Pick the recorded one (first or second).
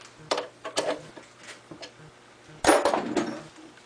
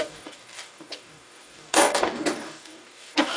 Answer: first